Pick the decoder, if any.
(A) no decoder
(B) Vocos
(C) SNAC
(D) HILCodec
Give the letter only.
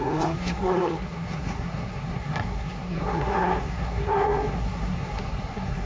C